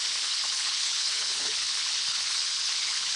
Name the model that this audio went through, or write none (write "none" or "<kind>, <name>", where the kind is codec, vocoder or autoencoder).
codec, HILCodec